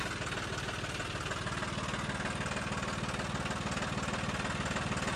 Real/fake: real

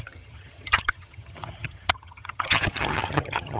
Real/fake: fake